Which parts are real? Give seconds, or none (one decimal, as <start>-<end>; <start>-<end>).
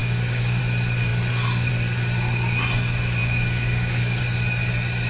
0.6-3.2; 4.2-5.1